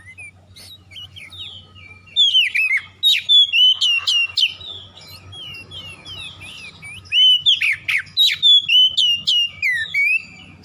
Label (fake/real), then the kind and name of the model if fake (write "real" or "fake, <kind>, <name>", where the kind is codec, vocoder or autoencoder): real